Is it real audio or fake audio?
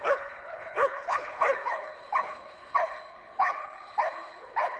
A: fake